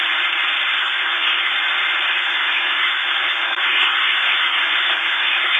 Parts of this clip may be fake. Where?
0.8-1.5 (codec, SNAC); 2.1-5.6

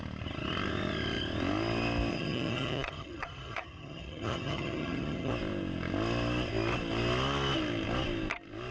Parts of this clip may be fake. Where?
2.1-5.3 (vocoder, HiFi-GAN)

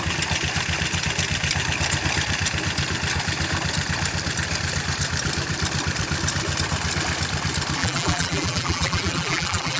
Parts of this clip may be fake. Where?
7.8-9.8 (vocoder, BigVGAN v2)

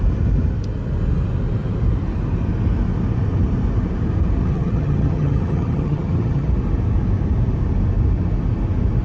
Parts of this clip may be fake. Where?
4.4-6.5 (vocoder, HiFi-GAN)

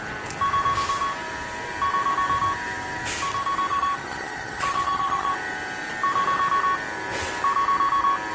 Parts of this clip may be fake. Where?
3.7-5.3 (vocoder, HiFi-GAN)